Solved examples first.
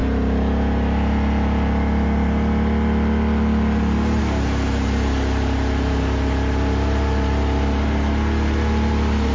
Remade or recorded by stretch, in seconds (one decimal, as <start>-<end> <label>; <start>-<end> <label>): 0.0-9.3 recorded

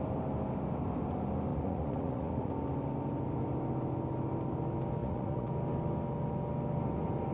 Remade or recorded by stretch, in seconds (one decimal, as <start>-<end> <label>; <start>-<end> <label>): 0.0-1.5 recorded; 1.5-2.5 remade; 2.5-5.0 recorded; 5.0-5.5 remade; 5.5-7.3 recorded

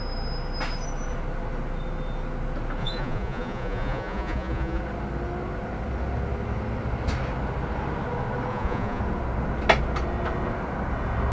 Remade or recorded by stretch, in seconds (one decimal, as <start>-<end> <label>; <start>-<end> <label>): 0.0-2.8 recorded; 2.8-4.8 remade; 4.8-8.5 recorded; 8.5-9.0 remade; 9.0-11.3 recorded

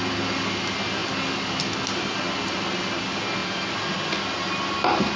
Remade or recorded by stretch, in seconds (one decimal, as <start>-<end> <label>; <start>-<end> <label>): 0.0-5.2 recorded